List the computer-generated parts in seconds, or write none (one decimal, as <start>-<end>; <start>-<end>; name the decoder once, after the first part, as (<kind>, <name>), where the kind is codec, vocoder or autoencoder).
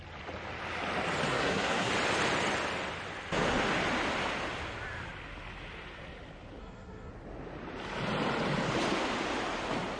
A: 1.3-1.9 (codec, SNAC); 6.6-7.1